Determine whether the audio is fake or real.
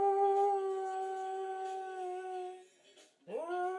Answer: real